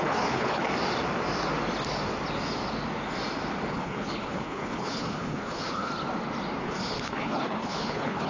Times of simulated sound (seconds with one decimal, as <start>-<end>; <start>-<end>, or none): 0.0-0.6; 3.7-5.9; 6.6-8.3